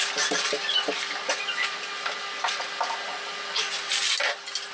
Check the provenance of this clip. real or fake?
real